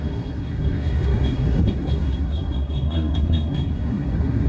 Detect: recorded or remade remade